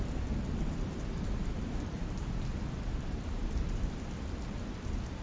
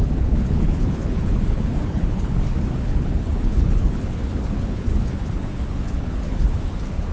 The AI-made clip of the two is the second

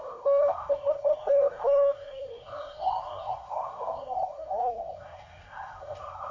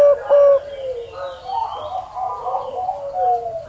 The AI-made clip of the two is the first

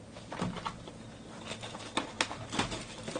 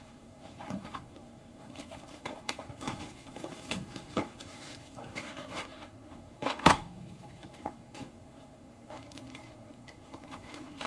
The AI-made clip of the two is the second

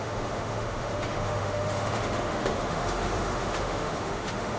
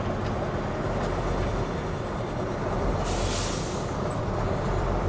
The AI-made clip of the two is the first